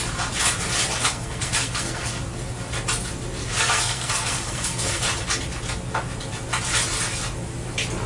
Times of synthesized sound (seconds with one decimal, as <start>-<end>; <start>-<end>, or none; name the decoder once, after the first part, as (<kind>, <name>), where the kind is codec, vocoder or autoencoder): 1.0-2.2 (codec, SNAC); 3.4-5.0